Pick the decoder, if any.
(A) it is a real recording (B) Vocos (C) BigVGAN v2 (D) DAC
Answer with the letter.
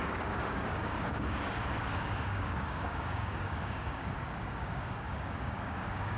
D